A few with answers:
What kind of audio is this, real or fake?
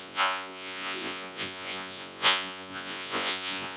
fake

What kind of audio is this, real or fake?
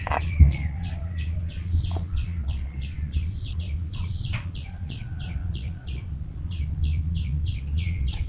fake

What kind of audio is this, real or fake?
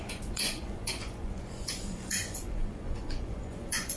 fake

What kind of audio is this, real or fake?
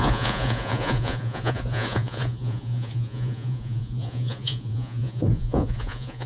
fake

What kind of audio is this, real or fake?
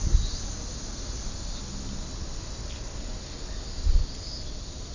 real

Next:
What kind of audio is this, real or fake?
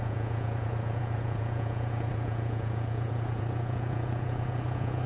fake